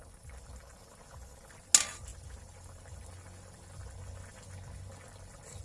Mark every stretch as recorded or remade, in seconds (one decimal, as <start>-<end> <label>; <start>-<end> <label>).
0.0-5.6 recorded